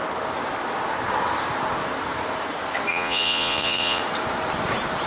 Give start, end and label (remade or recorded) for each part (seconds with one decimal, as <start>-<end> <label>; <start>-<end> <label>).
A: 0.0-2.9 recorded; 2.9-4.0 remade; 4.0-5.1 recorded